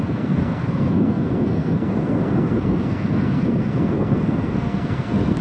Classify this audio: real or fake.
fake